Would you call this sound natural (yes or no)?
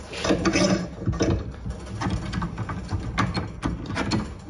yes